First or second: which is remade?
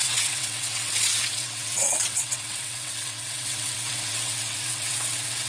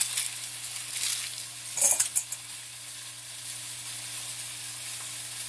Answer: first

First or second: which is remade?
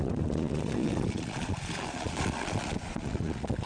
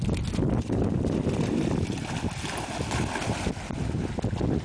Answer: first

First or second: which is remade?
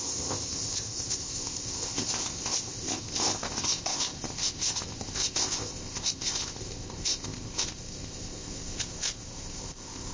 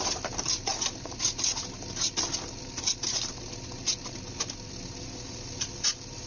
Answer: first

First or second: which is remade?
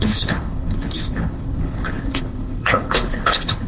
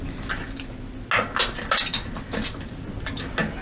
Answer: first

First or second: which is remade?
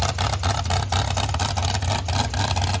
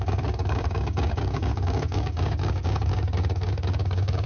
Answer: second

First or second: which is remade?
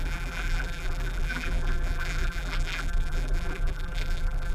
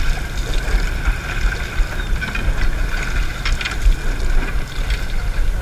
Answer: first